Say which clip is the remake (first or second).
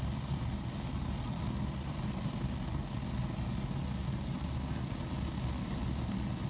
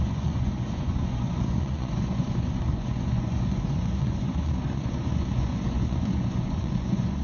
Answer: second